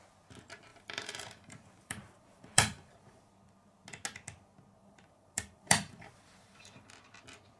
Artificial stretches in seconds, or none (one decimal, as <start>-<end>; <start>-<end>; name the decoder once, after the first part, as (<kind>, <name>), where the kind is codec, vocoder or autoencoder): 0.7-3.3 (vocoder, BigVGAN v2); 4.8-6.9